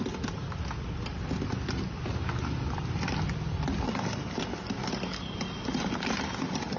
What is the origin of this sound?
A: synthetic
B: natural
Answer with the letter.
B